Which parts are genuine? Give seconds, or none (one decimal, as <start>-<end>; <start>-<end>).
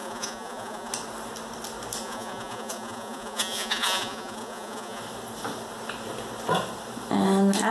0.9-2.0; 5.0-7.7